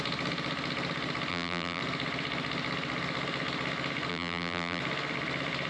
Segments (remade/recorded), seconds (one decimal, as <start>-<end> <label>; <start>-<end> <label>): 0.0-1.3 recorded; 1.3-1.8 remade; 1.8-4.1 recorded; 4.1-4.8 remade; 4.8-5.7 recorded

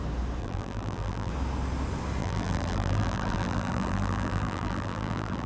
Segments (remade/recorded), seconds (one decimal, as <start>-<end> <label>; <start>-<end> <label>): 0.0-0.4 recorded; 0.4-1.3 remade; 1.3-2.2 recorded; 2.2-5.5 remade

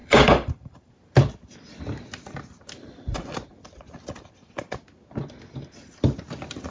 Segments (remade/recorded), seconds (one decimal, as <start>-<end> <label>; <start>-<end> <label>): 0.0-0.9 remade; 0.9-6.7 recorded